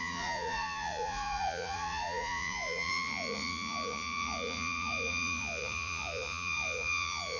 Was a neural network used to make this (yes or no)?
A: yes